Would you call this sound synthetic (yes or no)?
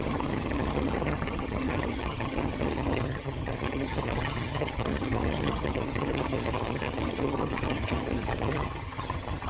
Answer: yes